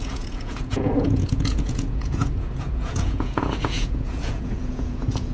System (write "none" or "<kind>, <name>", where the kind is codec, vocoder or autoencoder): vocoder, Vocos